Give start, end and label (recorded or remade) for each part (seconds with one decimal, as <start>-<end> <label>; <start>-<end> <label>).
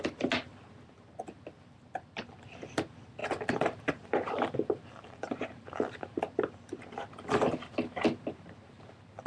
0.0-3.2 recorded; 3.2-6.2 remade; 6.2-9.3 recorded